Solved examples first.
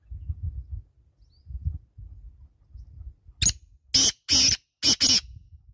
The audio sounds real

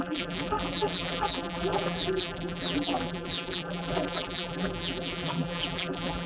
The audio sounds fake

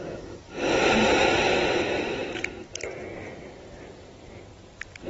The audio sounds fake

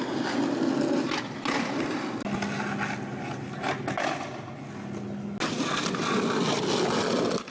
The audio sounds real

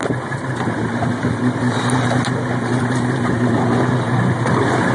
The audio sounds real